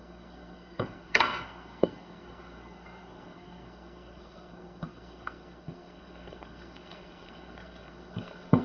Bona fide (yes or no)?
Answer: no